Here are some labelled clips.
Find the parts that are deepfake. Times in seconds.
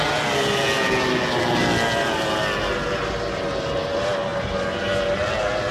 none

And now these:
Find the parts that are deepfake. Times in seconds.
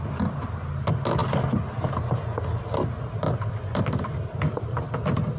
none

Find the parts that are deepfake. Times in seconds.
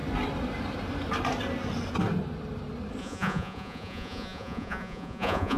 3.0-5.6 (vocoder, Vocos)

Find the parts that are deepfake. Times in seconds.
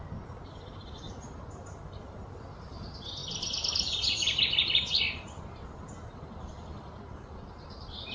none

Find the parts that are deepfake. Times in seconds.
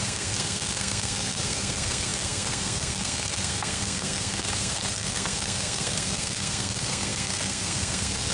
0.0-8.3 (codec, SNAC)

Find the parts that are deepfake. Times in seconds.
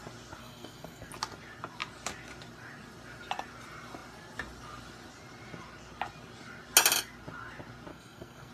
0.4-1.1 (codec, SNAC); 7.9-8.5